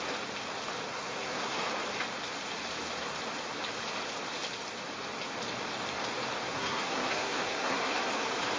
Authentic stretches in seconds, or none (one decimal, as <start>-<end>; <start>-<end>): 0.0-0.9; 1.7-6.5; 8.1-8.6